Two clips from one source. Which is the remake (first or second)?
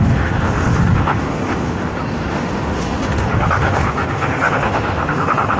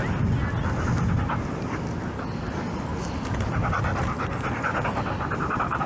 first